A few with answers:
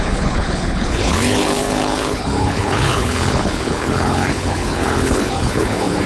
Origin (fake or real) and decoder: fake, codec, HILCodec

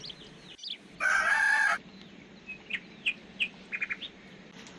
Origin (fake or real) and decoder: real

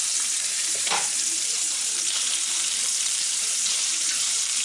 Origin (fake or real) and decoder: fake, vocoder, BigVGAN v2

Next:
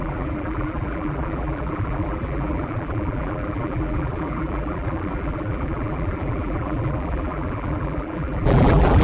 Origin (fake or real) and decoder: fake, vocoder, BigVGAN v2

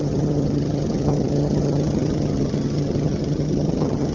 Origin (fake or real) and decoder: fake, vocoder, HiFi-GAN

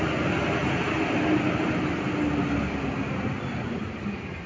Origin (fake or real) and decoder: real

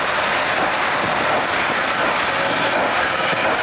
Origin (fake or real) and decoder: real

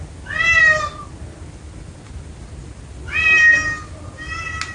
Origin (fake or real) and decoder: real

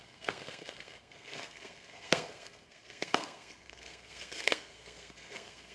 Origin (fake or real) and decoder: fake, codec, SNAC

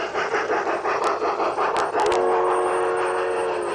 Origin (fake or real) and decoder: real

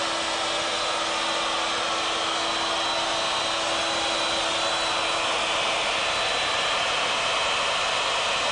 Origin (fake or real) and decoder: real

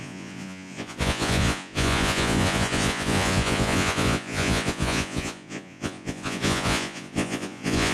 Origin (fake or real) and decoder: fake, vocoder, Vocos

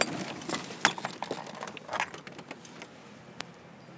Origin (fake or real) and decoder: real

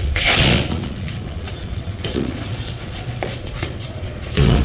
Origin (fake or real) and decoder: fake, vocoder, Vocos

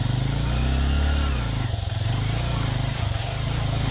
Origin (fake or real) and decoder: real